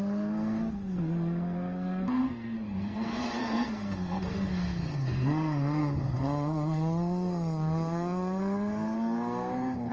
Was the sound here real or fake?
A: fake